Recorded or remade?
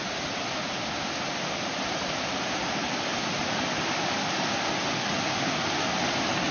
recorded